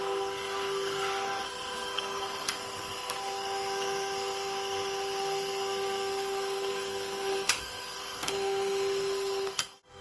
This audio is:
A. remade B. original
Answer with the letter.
A